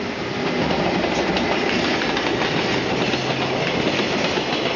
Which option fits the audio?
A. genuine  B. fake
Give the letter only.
A